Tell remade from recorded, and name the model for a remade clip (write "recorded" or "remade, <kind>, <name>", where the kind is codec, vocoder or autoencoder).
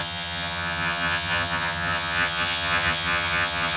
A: remade, vocoder, HiFi-GAN